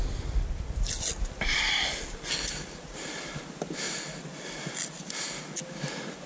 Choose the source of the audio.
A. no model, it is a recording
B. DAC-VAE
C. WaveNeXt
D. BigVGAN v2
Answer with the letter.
A